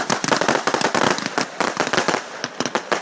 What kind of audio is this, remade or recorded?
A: recorded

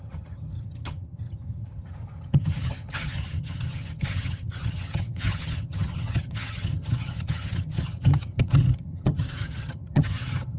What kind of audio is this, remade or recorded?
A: remade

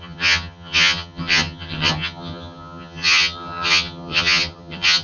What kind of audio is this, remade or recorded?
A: remade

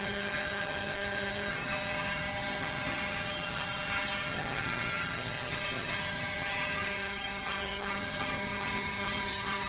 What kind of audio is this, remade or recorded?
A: remade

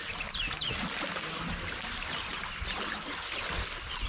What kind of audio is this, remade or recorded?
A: recorded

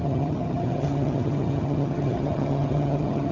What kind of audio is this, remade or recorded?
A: remade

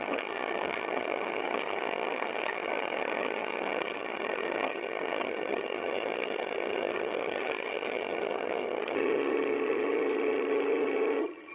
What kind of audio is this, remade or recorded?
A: remade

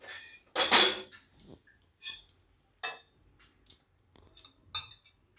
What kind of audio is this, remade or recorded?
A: recorded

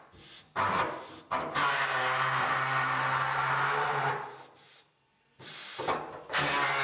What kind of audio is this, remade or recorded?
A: recorded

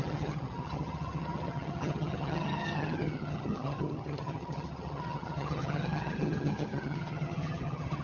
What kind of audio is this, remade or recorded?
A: remade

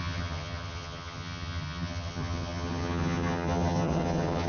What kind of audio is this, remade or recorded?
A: remade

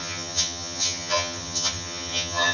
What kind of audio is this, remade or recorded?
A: remade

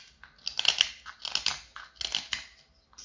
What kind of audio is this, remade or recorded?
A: recorded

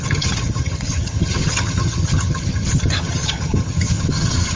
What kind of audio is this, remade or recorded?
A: remade